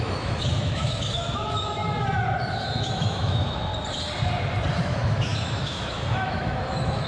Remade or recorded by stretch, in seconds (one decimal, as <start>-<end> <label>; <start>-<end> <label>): 0.0-1.8 remade; 1.8-2.5 recorded; 2.5-3.7 remade; 3.7-4.8 recorded; 4.8-7.1 remade